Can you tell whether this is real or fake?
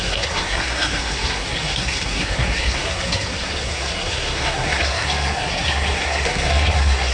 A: fake